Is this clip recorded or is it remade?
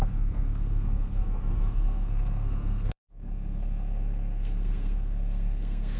remade